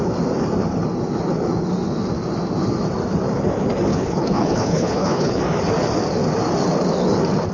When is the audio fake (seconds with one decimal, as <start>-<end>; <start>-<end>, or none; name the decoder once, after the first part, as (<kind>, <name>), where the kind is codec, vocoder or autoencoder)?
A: 3.9-5.4 (codec, HILCodec)